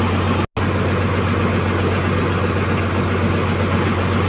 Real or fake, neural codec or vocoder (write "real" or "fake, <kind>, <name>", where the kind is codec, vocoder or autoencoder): real